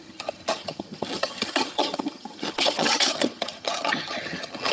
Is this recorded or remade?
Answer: remade